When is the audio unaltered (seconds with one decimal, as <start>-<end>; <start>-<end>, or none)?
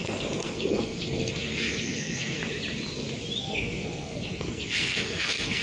2.4-3.4